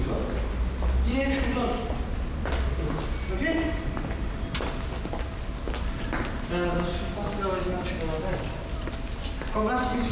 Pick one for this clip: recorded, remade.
recorded